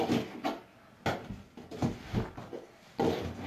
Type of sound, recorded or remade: recorded